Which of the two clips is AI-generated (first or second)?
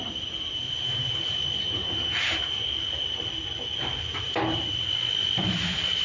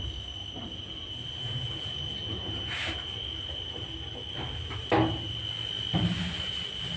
first